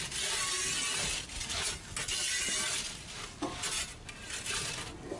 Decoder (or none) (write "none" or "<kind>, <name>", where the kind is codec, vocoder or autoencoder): none